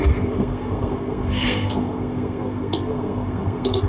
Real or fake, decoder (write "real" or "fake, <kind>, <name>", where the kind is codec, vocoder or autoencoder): fake, codec, SNAC